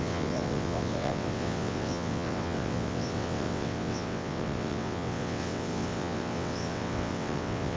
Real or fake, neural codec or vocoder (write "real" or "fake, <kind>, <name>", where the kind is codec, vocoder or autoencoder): fake, vocoder, WaveNeXt